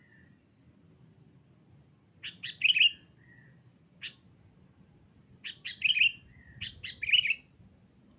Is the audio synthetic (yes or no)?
no